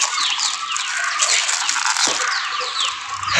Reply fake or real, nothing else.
real